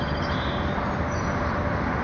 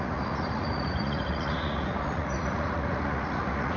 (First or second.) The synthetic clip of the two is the second